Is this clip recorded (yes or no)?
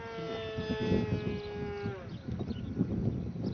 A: yes